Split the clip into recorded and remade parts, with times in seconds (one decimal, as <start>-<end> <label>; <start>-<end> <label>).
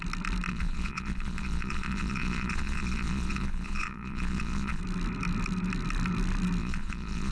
0.0-0.5 recorded; 0.5-4.8 remade; 4.8-6.6 recorded; 6.6-7.3 remade